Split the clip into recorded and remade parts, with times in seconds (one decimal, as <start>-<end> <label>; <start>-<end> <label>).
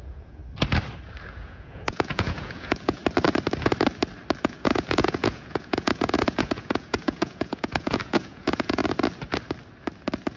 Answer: 0.0-0.4 remade; 0.4-1.3 recorded; 1.3-3.0 remade; 3.0-4.4 recorded; 4.4-8.8 remade; 8.8-10.4 recorded